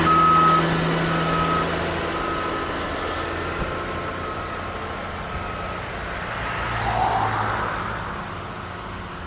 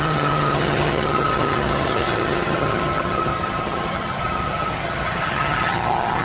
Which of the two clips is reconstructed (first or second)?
second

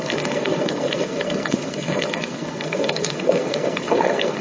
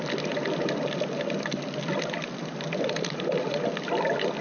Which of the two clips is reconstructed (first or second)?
first